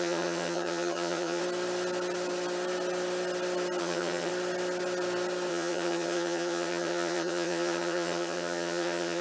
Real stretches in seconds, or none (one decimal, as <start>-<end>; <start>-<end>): 1.4-3.8; 4.3-5.5